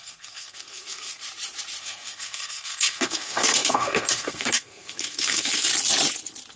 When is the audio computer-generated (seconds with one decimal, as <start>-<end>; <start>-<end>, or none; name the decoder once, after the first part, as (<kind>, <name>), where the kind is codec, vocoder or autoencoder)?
0.0-1.2 (codec, SNAC); 1.8-5.7